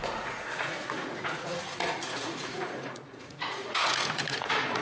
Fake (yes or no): yes